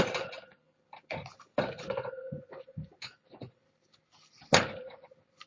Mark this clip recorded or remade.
recorded